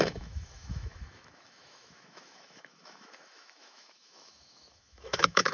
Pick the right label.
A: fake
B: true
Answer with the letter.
A